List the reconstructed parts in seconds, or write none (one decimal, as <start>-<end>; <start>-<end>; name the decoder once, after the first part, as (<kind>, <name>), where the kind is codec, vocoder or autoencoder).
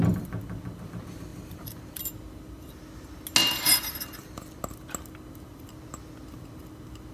1.3-1.9 (vocoder, BigVGAN v2); 3.4-4.4